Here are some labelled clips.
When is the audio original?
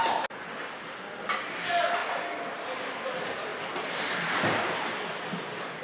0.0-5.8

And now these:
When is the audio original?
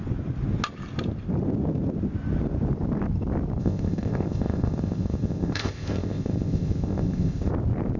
0.0-3.6; 7.5-8.0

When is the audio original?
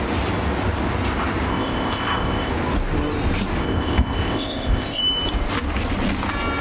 0.0-1.5; 2.5-3.6; 5.0-6.6